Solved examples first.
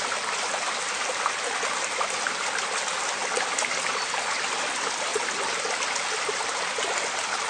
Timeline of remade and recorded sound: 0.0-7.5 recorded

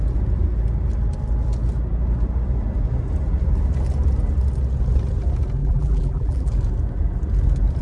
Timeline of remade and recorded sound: 0.0-5.6 recorded; 5.6-6.5 remade; 6.5-7.8 recorded

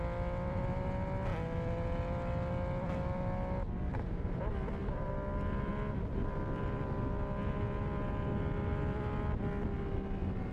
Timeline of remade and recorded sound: 0.0-10.5 recorded

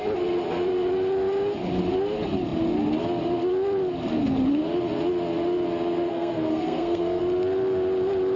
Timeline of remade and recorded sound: 0.0-6.1 recorded; 6.1-7.2 remade; 7.2-8.4 recorded

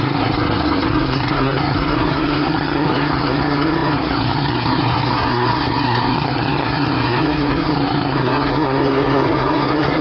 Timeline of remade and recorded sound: 0.0-10.0 remade

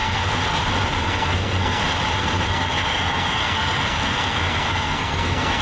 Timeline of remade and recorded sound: 0.0-0.6 remade; 0.6-1.0 recorded; 1.0-1.8 remade; 1.8-2.2 recorded; 2.2-5.6 remade

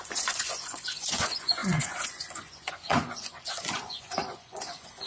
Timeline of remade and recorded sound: 0.0-5.1 remade

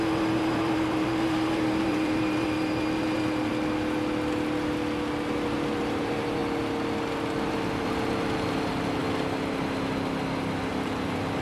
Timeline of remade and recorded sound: 0.0-3.5 remade; 3.5-5.8 recorded; 5.8-6.4 remade; 6.4-7.8 recorded; 7.8-9.0 remade; 9.0-10.7 recorded; 10.7-11.4 remade